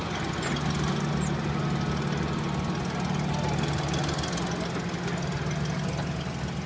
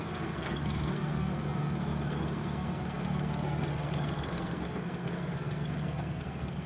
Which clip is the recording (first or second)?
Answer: first